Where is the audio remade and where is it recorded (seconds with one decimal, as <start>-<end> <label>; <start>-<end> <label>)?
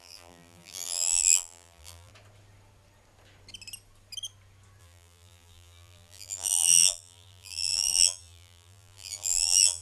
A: 0.0-2.1 remade; 2.1-4.8 recorded; 4.8-9.8 remade